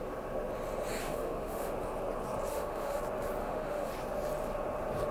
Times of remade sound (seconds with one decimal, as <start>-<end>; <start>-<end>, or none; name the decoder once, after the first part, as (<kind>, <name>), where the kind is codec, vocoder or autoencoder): 1.0-1.7 (autoencoder, DAC-VAE); 2.5-3.0; 3.4-3.9